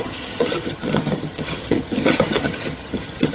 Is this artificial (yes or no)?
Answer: yes